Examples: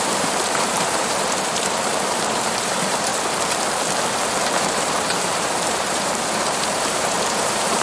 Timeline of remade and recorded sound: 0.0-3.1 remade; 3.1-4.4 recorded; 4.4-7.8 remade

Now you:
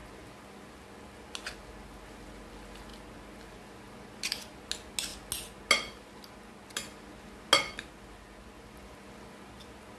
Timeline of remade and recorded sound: 0.0-10.0 recorded